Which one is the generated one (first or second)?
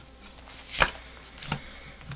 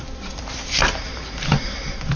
second